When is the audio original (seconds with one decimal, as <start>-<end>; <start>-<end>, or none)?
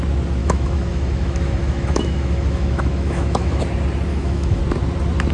0.0-0.4; 3.6-4.1; 4.6-5.3